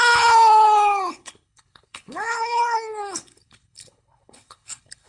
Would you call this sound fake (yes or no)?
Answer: yes